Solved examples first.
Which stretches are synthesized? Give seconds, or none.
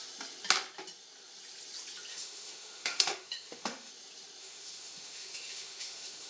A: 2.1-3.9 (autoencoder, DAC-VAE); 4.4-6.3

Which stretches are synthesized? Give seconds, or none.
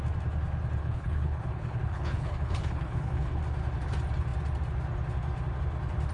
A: 0.8-3.4 (codec, HILCodec)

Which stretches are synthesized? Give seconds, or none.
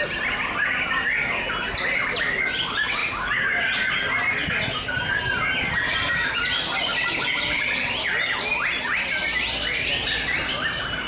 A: none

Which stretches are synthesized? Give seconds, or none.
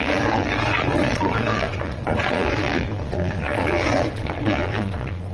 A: 0.0-5.3 (vocoder, Vocos)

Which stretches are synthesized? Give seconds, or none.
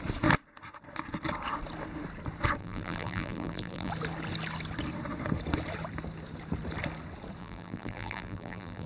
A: 2.6-3.9 (vocoder, BigVGAN v2); 7.4-8.9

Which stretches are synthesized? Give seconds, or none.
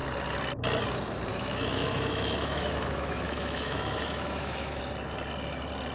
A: 1.3-4.8 (autoencoder, DAC-VAE)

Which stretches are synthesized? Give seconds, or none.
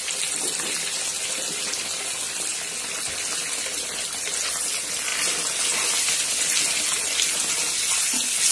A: none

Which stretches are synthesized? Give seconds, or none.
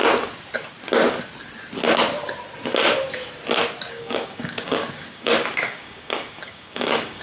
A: 3.9-7.2 (codec, DAC)